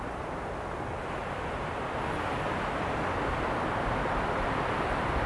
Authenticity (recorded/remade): recorded